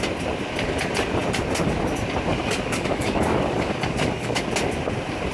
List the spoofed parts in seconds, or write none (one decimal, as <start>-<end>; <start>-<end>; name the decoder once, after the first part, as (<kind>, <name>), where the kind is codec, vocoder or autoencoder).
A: 2.3-4.4 (codec, DAC)